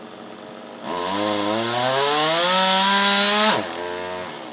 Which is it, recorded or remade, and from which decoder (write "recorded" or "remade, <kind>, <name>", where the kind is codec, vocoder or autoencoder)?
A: recorded